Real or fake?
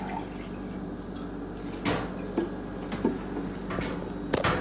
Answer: real